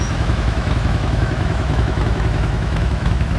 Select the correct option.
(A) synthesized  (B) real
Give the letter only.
A